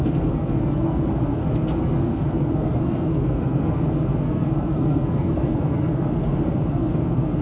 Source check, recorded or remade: remade